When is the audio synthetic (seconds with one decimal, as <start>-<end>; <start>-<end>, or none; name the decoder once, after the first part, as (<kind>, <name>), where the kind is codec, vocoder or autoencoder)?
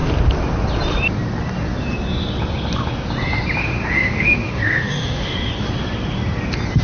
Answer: 3.6-5.5 (autoencoder, DAC-VAE)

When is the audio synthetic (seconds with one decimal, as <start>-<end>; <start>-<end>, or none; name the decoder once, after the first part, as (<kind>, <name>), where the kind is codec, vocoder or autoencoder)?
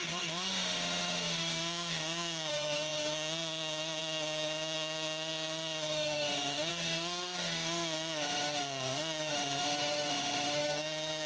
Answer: 0.0-11.3 (autoencoder, DAC-VAE)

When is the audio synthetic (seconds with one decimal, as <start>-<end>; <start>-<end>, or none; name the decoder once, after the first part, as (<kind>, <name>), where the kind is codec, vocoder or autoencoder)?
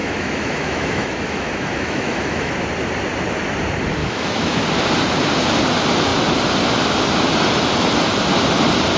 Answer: 0.0-2.5 (autoencoder, DAC-VAE); 4.0-4.6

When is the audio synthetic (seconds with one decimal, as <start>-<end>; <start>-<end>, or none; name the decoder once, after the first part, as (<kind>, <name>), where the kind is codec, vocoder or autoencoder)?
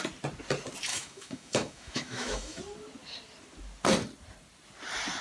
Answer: 0.9-2.6 (autoencoder, DAC-VAE)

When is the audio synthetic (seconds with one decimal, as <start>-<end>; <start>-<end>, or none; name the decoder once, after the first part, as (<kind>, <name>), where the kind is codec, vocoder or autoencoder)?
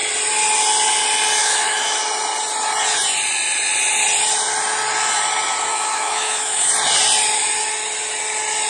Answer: 1.4-2.0 (autoencoder, DAC-VAE); 5.7-6.7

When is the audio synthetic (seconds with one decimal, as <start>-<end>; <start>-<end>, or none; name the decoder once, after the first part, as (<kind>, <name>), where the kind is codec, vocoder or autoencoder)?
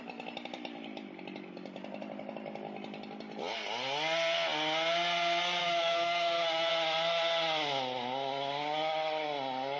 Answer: 5.6-6.7 (autoencoder, DAC-VAE)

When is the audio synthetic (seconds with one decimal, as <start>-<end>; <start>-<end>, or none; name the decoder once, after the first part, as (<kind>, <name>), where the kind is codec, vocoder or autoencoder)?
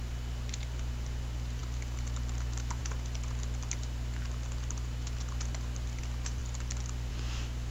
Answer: none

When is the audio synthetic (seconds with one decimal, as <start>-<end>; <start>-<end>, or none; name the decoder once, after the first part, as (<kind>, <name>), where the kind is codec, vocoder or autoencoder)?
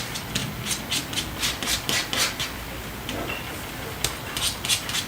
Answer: none